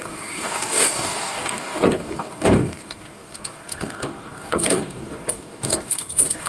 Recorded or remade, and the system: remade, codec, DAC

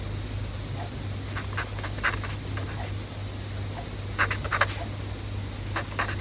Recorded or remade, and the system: recorded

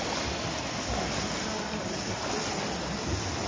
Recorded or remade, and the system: recorded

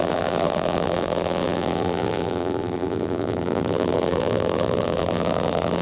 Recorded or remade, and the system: remade, vocoder, BigVGAN v2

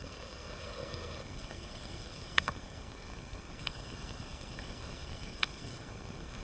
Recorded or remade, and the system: remade, codec, SNAC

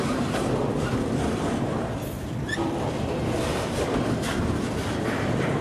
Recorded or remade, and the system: remade, vocoder, BigVGAN v2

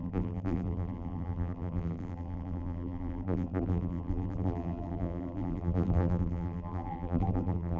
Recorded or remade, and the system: remade, vocoder, BigVGAN v2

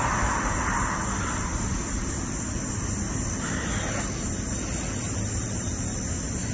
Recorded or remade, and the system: recorded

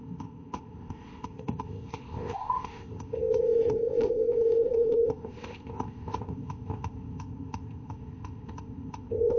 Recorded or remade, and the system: remade, codec, ZipCodec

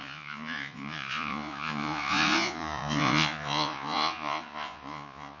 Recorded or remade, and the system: remade, vocoder, Vocos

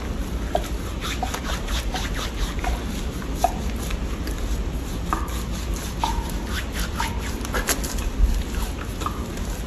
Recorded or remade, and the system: recorded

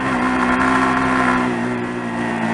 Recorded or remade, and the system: remade, vocoder, BigVGAN v2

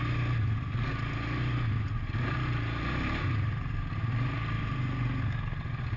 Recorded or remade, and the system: recorded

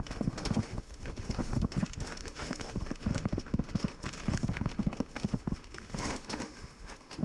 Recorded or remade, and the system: remade, autoencoder, DAC-VAE